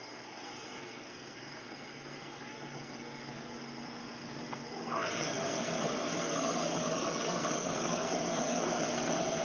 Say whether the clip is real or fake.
fake